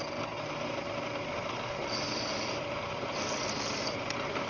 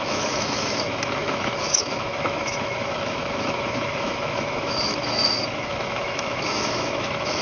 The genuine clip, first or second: first